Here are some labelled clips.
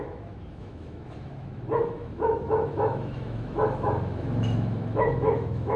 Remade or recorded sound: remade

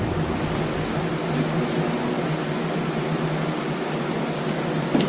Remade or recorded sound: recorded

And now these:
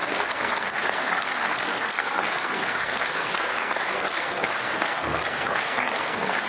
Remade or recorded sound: remade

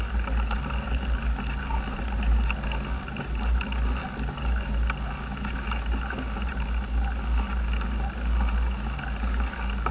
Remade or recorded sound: recorded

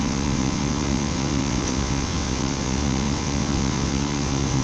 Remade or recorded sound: remade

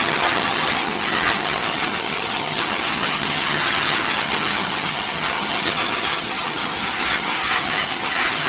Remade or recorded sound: remade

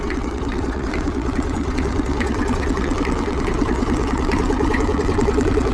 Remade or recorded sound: remade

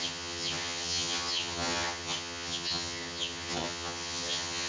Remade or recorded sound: remade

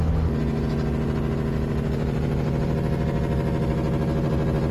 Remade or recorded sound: recorded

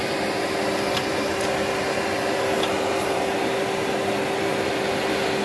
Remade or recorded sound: recorded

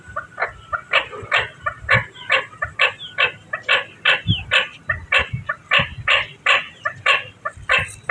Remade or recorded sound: recorded